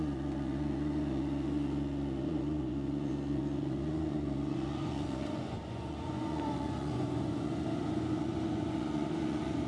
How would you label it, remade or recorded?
remade